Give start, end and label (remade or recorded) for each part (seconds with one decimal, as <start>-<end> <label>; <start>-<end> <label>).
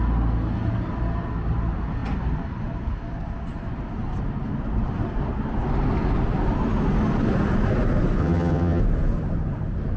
0.0-8.2 recorded; 8.2-8.8 remade; 8.8-10.0 recorded